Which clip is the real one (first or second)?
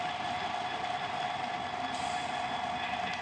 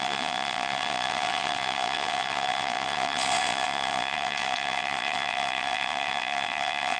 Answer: first